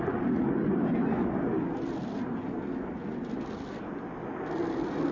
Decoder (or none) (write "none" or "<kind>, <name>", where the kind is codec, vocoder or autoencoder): none